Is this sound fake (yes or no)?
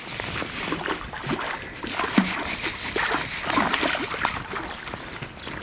no